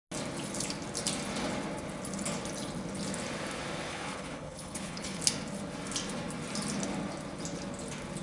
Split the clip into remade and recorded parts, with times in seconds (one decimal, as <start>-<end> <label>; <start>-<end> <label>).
0.0-3.9 recorded; 3.9-5.2 remade; 5.2-8.2 recorded